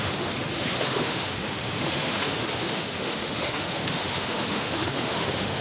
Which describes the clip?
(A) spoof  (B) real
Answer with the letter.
A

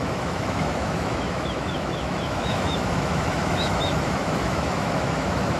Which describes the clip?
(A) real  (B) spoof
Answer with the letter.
B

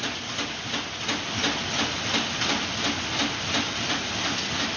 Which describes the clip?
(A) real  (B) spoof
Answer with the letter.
A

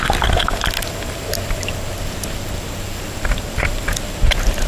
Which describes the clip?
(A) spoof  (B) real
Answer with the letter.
B